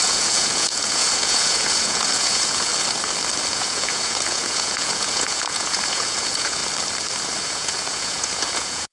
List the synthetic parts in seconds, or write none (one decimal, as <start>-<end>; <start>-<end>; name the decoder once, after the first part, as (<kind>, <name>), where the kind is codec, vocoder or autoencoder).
0.0-2.7 (vocoder, Vocos); 3.5-6.6; 7.4-8.9